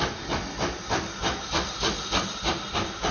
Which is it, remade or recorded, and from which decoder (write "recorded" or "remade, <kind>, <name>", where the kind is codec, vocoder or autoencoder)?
remade, vocoder, BigVGAN v2